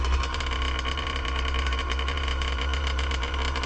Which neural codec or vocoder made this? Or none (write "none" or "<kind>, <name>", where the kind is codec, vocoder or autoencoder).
vocoder, BigVGAN v2